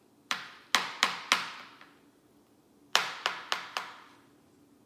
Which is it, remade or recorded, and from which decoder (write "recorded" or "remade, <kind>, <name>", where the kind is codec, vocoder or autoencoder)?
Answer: recorded